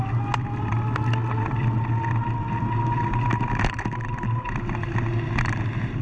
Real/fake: real